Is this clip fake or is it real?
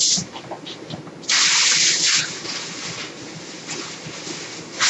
real